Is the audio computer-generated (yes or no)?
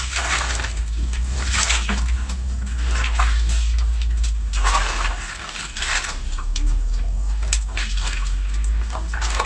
yes